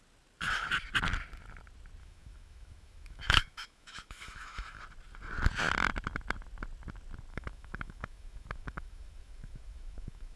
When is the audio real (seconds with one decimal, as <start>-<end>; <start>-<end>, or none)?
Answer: 0.0-2.0; 4.8-7.3